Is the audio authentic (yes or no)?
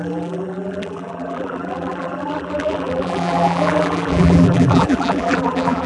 no